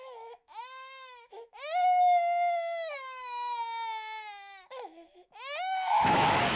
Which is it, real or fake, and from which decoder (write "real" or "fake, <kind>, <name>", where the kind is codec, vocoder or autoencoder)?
fake, autoencoder, DAC-VAE